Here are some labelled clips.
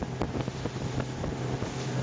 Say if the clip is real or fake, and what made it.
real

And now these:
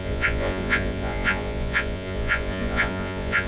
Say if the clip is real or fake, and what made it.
fake, vocoder, Vocos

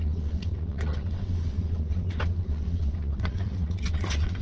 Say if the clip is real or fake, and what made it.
fake, vocoder, WaveNeXt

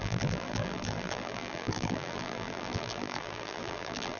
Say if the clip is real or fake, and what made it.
fake, vocoder, BigVGAN v2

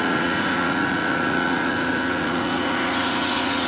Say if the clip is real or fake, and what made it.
fake, vocoder, Vocos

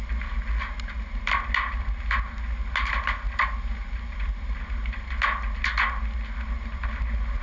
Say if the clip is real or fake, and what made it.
real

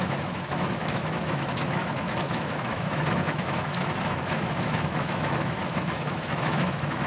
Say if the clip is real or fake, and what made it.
fake, autoencoder, DAC-VAE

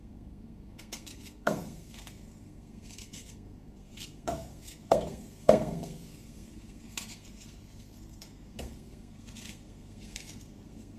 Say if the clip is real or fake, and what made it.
fake, codec, SNAC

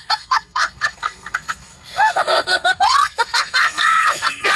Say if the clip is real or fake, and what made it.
fake, codec, SNAC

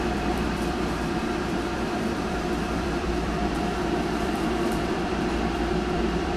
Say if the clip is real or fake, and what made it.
fake, vocoder, BigVGAN v2